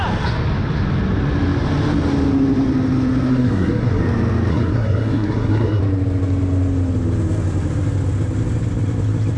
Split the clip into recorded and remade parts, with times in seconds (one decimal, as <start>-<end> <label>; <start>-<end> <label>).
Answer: 0.0-3.3 recorded; 3.3-4.0 remade; 4.0-4.5 recorded; 4.5-5.8 remade; 5.8-9.4 recorded